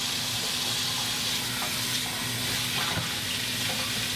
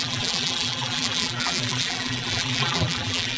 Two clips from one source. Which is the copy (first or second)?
second